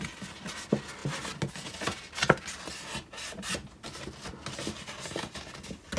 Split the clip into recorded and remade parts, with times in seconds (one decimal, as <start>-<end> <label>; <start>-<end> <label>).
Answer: 0.0-6.0 recorded